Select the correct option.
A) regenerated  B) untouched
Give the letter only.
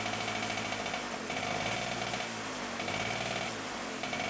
B